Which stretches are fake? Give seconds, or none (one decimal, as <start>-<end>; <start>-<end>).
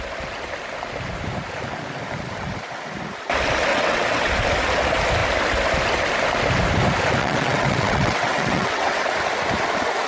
3.7-4.3; 7.2-9.0